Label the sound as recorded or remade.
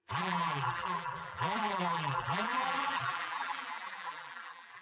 remade